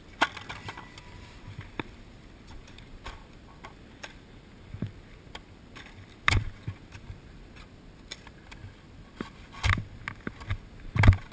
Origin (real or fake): real